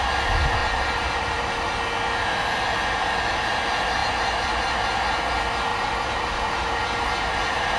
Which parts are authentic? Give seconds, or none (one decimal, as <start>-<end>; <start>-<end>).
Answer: 0.0-0.6; 1.5-4.0; 4.5-5.7